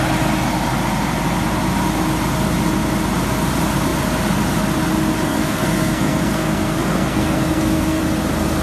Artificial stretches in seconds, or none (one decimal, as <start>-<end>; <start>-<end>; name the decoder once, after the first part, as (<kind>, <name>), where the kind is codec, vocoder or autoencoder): 5.3-8.0 (codec, SNAC)